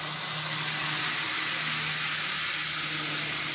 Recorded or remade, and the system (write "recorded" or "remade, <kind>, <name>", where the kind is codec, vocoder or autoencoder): recorded